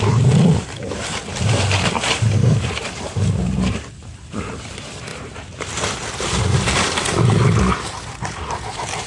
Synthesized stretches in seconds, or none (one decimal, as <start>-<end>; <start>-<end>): 0.0-9.1